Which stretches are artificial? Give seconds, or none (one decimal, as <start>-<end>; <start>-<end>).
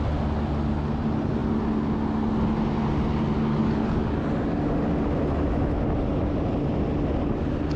3.6-4.7